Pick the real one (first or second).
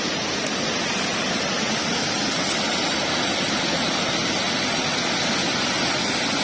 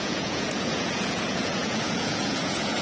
first